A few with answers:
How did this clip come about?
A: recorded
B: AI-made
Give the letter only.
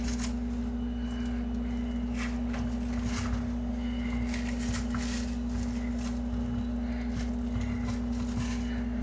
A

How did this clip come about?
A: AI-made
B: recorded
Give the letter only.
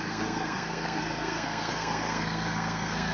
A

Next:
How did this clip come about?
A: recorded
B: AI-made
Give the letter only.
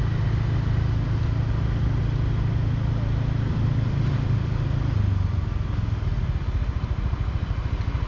A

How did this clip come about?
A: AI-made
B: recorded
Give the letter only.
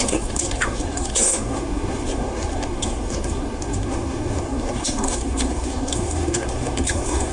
A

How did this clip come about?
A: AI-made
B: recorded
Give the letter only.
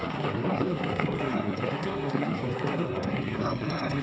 A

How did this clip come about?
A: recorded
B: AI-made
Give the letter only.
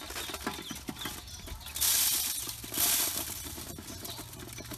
A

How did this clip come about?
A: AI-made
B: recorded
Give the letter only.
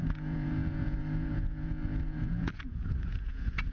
A